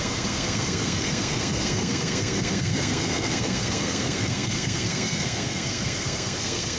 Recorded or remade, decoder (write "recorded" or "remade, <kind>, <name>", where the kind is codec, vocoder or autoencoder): remade, codec, SNAC